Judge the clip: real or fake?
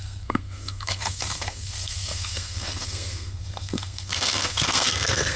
fake